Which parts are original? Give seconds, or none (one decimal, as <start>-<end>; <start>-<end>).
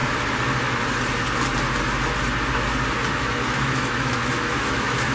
0.0-3.1